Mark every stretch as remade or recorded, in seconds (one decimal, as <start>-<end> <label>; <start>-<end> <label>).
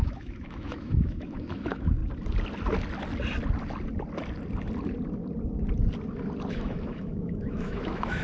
0.0-2.0 remade; 2.0-6.5 recorded; 6.5-8.2 remade